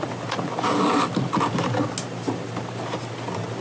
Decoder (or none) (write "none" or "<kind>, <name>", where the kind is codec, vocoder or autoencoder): none